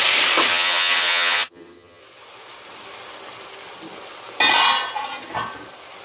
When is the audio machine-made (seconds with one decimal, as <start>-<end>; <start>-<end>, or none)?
0.5-2.0